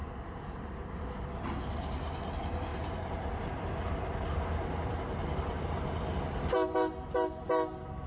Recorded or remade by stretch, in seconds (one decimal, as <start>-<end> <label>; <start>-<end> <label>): 0.0-0.6 remade; 0.6-2.7 recorded; 2.7-3.4 remade; 3.4-8.1 recorded

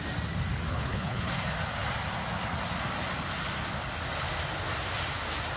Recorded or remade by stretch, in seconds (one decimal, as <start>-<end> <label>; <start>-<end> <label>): 0.0-0.7 recorded; 0.7-1.3 remade; 1.3-5.6 recorded

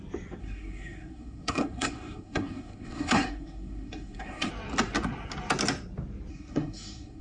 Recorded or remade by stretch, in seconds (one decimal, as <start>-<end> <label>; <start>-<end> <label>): 0.0-0.4 recorded; 0.4-4.5 remade; 4.5-6.3 recorded; 6.3-7.2 remade

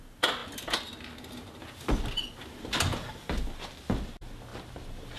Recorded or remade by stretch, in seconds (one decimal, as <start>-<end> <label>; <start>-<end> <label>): 0.0-4.5 recorded; 4.5-5.2 remade

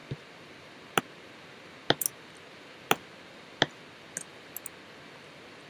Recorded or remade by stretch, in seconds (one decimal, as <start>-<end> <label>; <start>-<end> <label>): 0.0-5.7 recorded

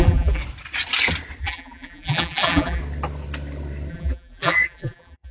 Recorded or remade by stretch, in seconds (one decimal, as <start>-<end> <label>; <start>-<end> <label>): 0.0-0.4 remade; 0.4-1.4 recorded; 1.4-2.8 remade; 2.8-3.9 recorded; 3.9-5.3 remade